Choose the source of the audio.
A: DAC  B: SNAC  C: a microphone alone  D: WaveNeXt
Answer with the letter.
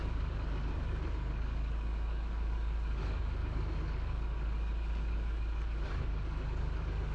A